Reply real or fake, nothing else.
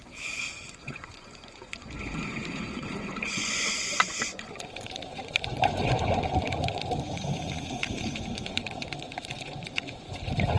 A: fake